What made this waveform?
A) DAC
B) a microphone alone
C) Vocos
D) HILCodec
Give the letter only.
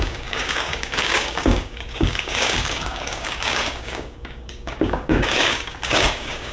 A